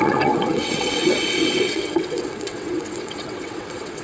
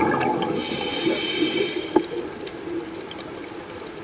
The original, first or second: second